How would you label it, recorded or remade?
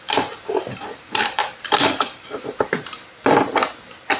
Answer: remade